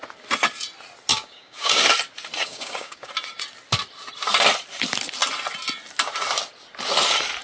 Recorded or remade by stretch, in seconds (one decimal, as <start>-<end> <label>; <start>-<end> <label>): 0.0-1.1 recorded; 1.1-1.7 remade; 1.7-2.4 recorded; 2.4-3.1 remade; 3.1-7.4 recorded